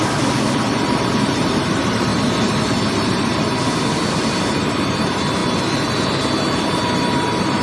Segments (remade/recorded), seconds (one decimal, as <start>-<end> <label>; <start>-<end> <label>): 0.0-2.1 remade; 2.1-3.1 recorded; 3.1-7.6 remade